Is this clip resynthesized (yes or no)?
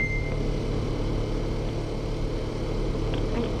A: no